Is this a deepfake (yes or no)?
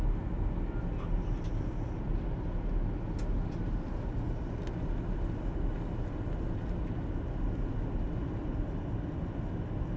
no